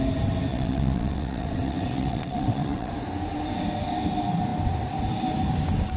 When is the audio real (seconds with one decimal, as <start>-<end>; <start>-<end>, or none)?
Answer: 0.0-0.5; 2.9-6.0